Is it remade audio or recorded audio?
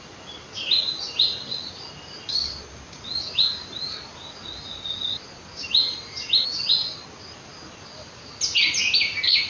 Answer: recorded